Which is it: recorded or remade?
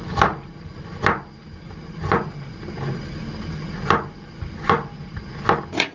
recorded